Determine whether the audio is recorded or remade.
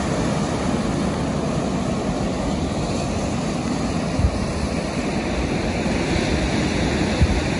recorded